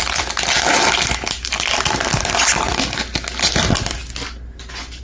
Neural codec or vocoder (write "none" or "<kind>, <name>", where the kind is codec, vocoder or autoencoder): none